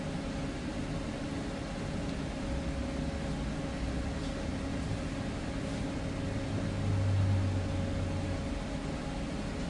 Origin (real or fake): real